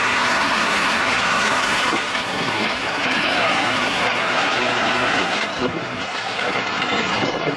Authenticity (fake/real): fake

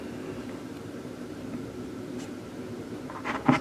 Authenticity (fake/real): fake